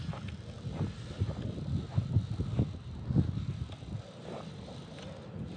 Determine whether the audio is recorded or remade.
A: recorded